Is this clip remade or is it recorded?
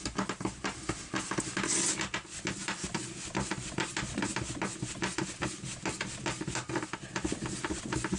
recorded